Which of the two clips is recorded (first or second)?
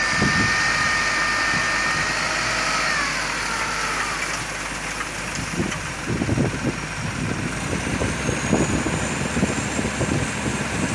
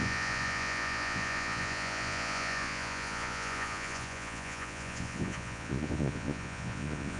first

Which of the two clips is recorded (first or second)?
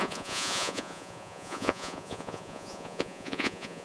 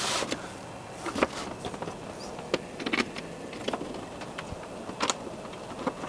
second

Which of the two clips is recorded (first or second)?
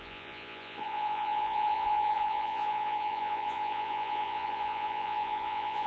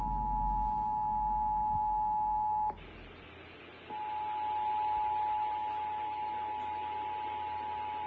second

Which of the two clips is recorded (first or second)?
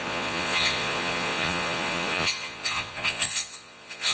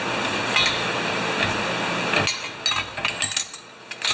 second